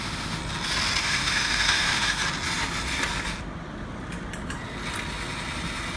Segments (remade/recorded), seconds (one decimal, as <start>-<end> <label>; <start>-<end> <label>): 0.0-0.4 remade; 0.4-1.0 recorded; 1.0-2.2 remade; 2.2-6.0 recorded